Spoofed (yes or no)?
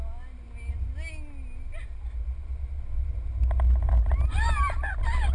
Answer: no